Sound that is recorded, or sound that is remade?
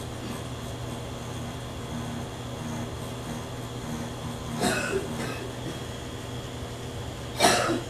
recorded